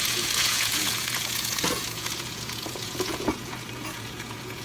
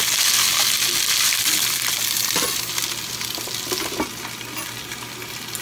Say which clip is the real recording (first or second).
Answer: second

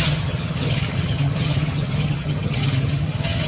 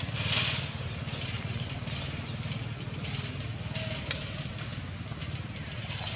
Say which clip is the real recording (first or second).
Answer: second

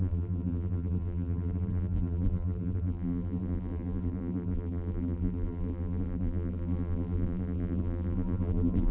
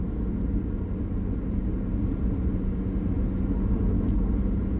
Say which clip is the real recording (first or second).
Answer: second